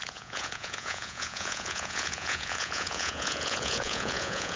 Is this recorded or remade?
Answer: remade